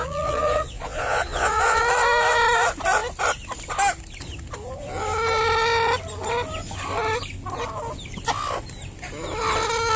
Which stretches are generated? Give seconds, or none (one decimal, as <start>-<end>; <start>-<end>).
0.0-1.8